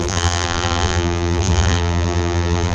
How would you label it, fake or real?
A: fake